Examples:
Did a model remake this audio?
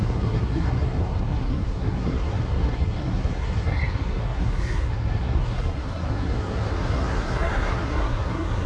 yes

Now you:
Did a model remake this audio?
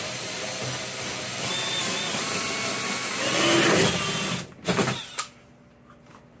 no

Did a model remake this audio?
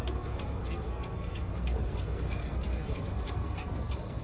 yes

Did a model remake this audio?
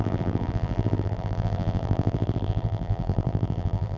yes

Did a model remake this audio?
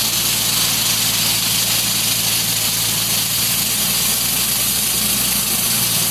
no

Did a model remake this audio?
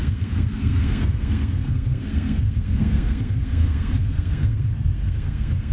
yes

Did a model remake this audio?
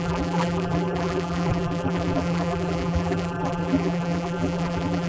yes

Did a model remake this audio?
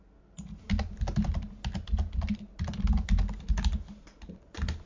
no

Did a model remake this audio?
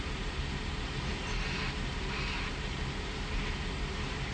no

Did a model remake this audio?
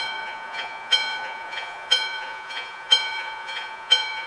yes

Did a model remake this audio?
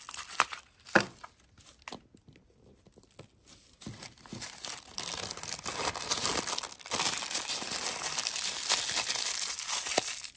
no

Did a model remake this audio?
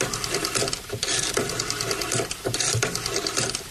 no